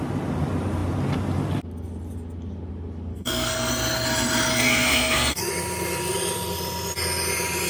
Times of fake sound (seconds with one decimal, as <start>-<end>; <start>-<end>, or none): 3.1-3.7; 4.5-5.5